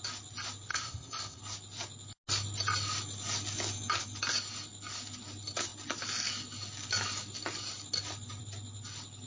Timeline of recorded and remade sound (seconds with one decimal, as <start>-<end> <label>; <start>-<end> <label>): 0.0-0.7 recorded; 0.7-1.4 remade; 1.4-9.3 recorded